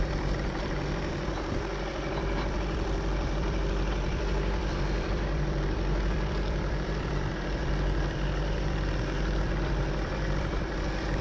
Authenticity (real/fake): fake